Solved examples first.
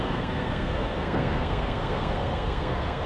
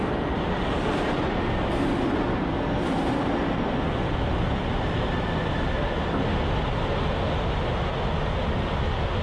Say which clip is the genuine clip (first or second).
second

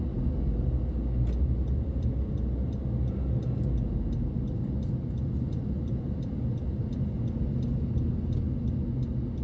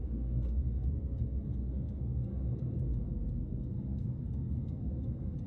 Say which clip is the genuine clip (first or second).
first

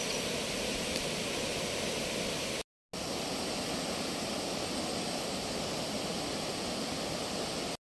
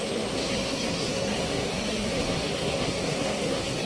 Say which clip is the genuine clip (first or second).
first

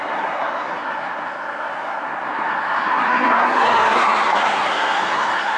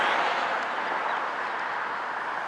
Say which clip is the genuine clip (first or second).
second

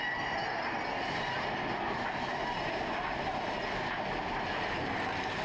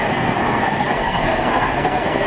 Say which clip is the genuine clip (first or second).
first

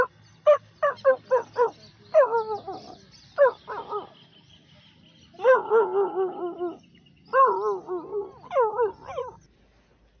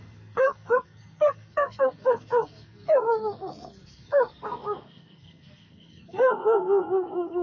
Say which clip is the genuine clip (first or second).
first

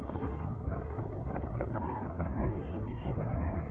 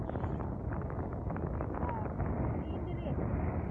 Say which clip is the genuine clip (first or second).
second